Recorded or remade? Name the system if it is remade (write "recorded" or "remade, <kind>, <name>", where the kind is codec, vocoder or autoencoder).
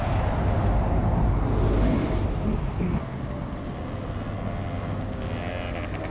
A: recorded